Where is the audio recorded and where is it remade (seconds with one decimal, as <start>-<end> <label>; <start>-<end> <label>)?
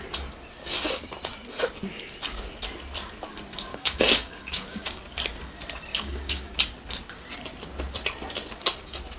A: 0.0-3.7 recorded; 3.7-5.0 remade; 5.0-5.9 recorded; 5.9-6.5 remade; 6.5-9.2 recorded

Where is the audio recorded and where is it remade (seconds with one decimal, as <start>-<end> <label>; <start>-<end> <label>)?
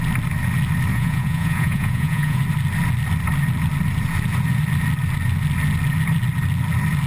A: 0.0-0.9 recorded; 0.9-2.4 remade; 2.4-7.1 recorded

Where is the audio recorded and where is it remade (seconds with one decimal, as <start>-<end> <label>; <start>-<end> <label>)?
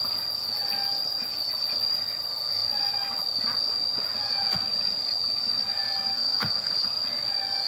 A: 0.0-6.1 recorded; 6.1-6.7 remade; 6.7-7.7 recorded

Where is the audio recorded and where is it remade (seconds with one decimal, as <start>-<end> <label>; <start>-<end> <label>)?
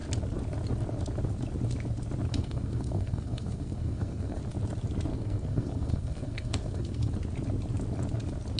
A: 0.0-2.3 recorded; 2.3-4.4 remade; 4.4-5.1 recorded; 5.1-7.1 remade; 7.1-8.6 recorded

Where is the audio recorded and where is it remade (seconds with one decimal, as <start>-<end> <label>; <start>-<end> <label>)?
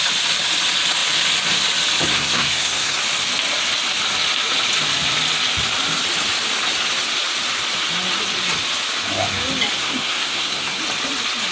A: 0.0-2.1 recorded; 2.1-3.0 remade; 3.0-9.8 recorded; 9.8-10.8 remade; 10.8-11.5 recorded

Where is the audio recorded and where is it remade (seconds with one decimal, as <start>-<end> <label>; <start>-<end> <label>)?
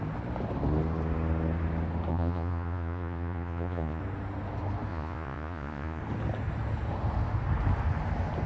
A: 0.0-2.1 recorded; 2.1-4.0 remade; 4.0-4.9 recorded; 4.9-6.0 remade; 6.0-8.5 recorded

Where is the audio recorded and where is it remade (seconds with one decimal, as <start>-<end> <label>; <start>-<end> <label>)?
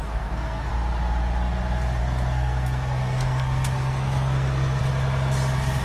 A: 0.0-0.7 remade; 0.7-2.0 recorded; 2.0-4.8 remade; 4.8-5.8 recorded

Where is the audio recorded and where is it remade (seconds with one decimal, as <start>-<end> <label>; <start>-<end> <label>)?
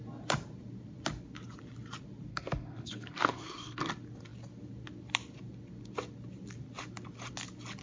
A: 0.0-2.3 recorded; 2.3-3.9 remade; 3.9-7.8 recorded